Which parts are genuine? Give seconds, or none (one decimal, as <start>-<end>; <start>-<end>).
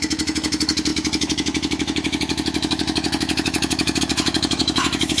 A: none